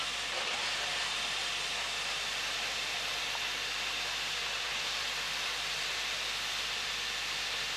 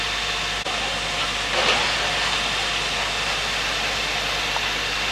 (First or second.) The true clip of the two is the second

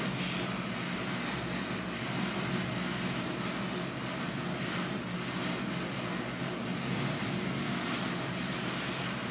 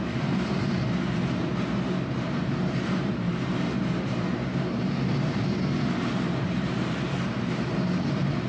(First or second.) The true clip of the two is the first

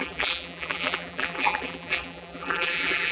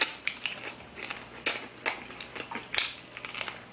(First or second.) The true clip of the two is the second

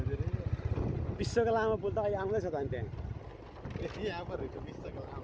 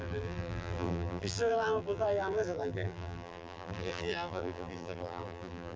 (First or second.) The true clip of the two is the first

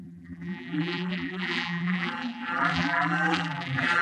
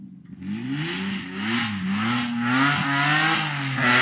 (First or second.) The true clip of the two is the second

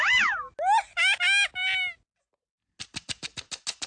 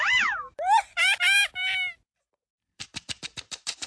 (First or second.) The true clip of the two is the first